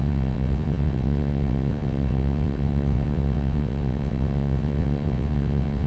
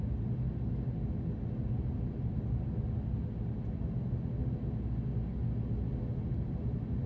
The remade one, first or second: first